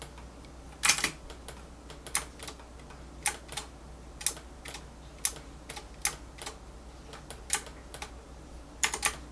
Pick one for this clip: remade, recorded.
recorded